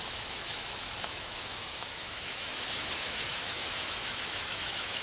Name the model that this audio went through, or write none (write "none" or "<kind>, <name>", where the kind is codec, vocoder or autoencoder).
autoencoder, DAC-VAE